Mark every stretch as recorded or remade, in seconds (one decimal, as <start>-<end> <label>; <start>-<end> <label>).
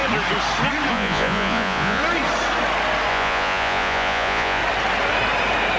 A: 0.0-0.9 recorded; 0.9-2.0 remade; 2.0-3.1 recorded; 3.1-4.6 remade; 4.6-5.8 recorded